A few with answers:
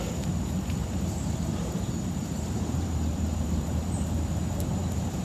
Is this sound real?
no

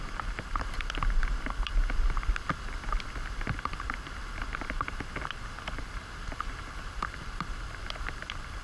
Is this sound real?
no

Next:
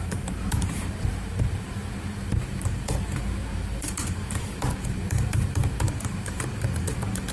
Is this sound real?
no